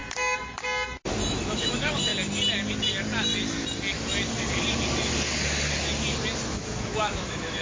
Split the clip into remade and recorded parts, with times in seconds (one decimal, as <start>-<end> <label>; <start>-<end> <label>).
0.0-1.3 recorded; 1.3-2.1 remade; 2.1-6.5 recorded; 6.5-7.6 remade

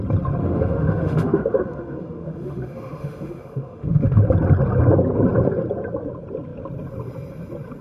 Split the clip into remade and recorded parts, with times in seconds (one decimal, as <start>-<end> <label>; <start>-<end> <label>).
0.0-0.4 recorded; 0.4-4.2 remade; 4.2-7.8 recorded

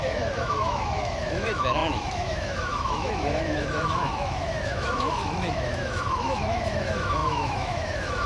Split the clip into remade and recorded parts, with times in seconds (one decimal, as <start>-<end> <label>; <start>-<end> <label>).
0.0-8.3 remade

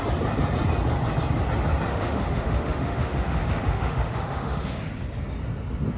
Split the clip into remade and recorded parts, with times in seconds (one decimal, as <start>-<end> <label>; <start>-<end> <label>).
0.0-1.9 recorded; 1.9-4.8 remade; 4.8-6.0 recorded

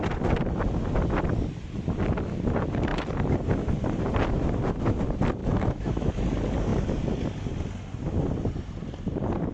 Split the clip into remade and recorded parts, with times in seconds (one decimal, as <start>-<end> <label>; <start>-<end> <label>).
0.0-5.4 recorded; 5.4-6.1 remade; 6.1-9.5 recorded

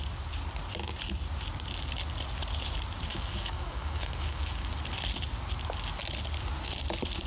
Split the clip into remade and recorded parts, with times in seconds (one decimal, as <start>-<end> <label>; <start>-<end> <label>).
0.0-3.1 recorded; 3.1-4.7 remade; 4.7-7.3 recorded

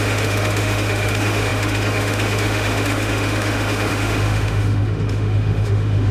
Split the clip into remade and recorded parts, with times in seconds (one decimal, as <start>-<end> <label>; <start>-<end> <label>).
0.0-6.1 remade

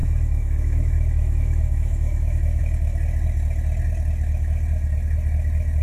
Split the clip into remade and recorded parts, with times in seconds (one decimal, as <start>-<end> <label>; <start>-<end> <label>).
0.0-2.6 remade; 2.6-5.8 recorded